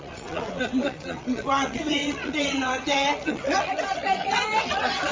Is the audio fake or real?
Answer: fake